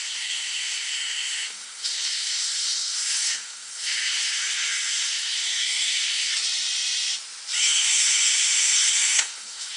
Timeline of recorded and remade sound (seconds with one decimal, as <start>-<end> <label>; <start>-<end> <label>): 0.0-6.3 remade; 6.3-7.6 recorded; 7.6-9.8 remade